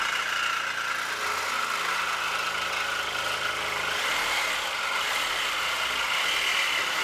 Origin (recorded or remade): recorded